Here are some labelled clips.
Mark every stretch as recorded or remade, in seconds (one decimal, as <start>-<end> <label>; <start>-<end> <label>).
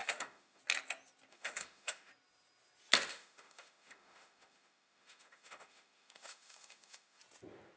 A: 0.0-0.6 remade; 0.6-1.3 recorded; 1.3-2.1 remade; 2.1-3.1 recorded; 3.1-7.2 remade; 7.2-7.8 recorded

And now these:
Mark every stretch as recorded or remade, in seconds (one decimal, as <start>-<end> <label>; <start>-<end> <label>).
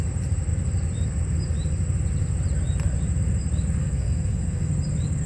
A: 0.0-3.8 recorded; 3.8-4.7 remade; 4.7-5.3 recorded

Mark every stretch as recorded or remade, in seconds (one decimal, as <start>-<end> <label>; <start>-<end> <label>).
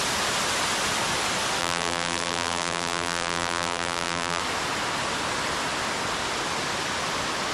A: 0.0-1.6 recorded; 1.6-4.4 remade; 4.4-7.5 recorded